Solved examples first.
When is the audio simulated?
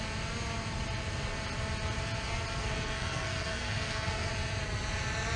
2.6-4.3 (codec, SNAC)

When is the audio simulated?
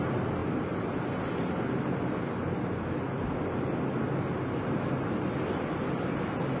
none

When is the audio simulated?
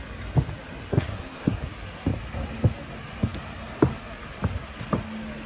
0.9-1.7 (codec, SNAC)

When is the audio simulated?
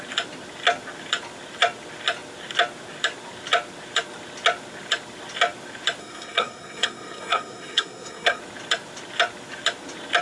6.0-8.4 (codec, SNAC)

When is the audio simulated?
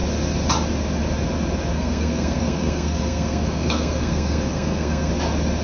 1.7-5.1 (codec, SNAC)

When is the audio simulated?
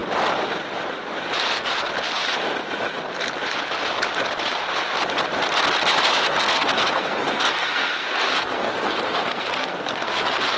1.5-1.9 (codec, SNAC); 6.1-10.6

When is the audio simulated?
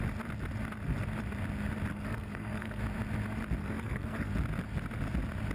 1.9-2.8 (codec, SNAC); 3.6-4.3